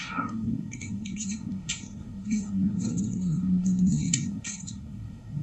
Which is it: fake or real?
fake